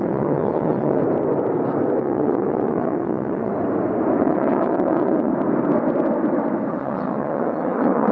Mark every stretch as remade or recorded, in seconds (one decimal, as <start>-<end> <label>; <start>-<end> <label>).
0.0-1.0 remade; 1.0-2.0 recorded; 2.0-3.5 remade; 3.5-4.2 recorded; 4.2-5.3 remade; 5.3-6.7 recorded; 6.7-8.1 remade